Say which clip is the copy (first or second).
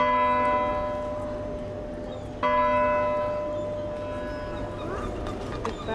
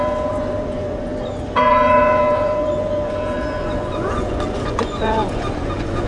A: second